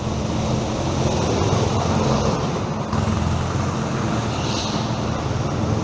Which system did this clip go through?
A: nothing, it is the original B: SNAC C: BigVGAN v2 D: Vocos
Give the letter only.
A